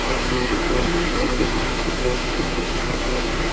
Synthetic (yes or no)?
yes